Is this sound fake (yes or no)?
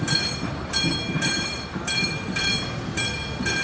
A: yes